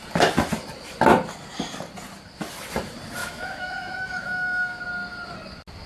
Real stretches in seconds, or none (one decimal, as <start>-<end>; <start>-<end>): 0.0-3.2; 4.8-5.9